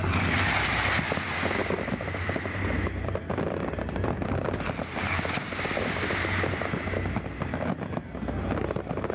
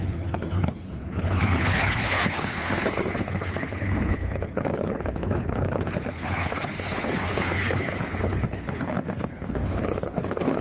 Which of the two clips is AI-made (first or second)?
second